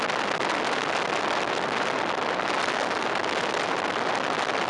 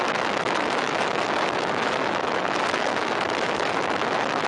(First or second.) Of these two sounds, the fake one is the second